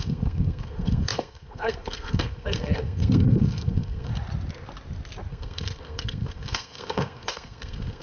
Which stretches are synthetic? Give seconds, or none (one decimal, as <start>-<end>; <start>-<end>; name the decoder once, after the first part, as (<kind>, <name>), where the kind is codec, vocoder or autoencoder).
0.0-4.1 (codec, SNAC); 5.3-8.0